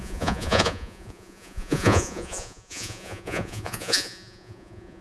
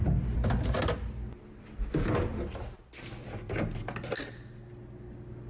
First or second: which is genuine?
second